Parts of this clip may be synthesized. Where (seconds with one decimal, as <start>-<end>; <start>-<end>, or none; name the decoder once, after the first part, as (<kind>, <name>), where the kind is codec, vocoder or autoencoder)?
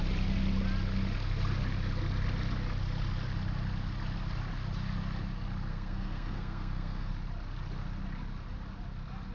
5.7-7.1 (codec, SNAC)